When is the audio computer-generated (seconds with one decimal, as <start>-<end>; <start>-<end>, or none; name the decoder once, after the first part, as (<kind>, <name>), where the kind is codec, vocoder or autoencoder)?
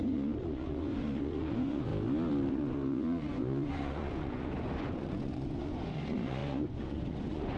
0.0-1.9 (vocoder, Vocos); 2.5-7.6